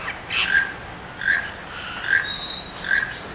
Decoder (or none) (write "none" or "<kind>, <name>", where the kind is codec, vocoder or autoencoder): none